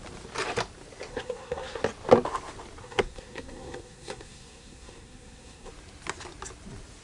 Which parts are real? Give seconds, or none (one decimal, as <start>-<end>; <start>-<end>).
0.0-1.1; 1.8-2.8; 5.7-7.0